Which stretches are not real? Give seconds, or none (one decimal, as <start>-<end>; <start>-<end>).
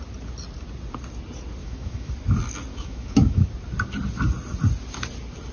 1.6-2.1; 2.7-3.5